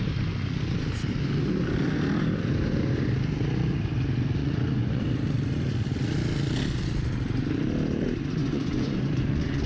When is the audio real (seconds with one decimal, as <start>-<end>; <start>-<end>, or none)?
0.0-4.4; 5.0-8.4

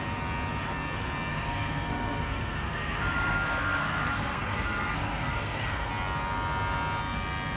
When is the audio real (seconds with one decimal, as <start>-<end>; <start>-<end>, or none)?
0.0-1.3; 5.9-7.6

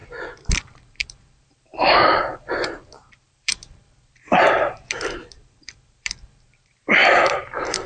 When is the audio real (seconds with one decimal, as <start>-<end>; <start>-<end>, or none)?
0.0-0.6

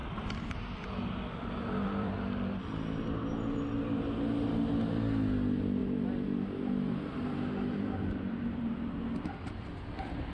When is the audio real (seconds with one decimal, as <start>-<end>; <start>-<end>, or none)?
2.6-5.8; 9.0-10.3

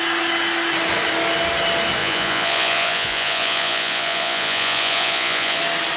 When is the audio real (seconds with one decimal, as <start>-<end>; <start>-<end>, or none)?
0.0-2.0; 5.6-6.0